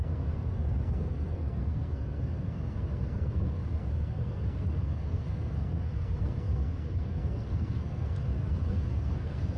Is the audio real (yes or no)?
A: no